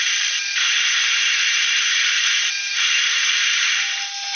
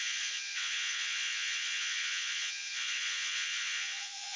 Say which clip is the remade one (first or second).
second